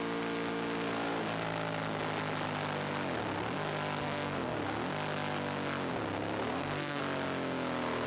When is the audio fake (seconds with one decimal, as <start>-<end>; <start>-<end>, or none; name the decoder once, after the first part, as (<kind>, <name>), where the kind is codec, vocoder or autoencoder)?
4.0-4.6 (codec, SNAC); 6.5-7.0